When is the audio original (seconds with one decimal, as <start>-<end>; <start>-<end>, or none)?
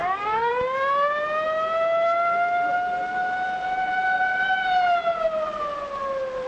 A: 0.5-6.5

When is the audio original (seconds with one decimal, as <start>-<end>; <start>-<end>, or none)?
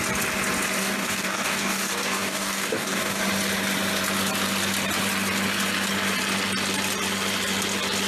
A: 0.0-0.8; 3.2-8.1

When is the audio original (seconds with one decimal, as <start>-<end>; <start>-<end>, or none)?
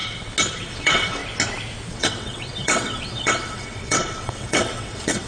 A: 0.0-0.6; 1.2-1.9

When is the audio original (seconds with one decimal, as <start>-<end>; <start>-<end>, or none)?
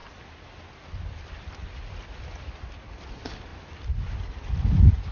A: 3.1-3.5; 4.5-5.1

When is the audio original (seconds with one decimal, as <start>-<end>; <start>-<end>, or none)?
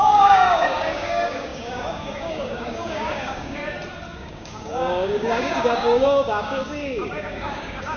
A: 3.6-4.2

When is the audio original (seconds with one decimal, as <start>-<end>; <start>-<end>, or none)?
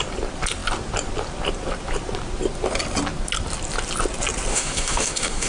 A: 0.0-4.5